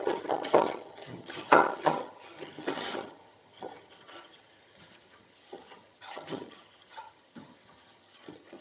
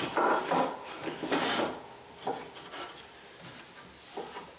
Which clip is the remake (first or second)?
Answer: first